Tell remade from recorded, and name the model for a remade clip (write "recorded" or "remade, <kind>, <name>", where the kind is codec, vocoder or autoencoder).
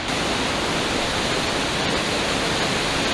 recorded